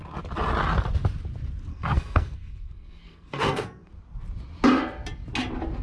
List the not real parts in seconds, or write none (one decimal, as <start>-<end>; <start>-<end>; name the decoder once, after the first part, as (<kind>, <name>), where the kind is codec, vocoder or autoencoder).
1.7-3.9 (codec, SNAC)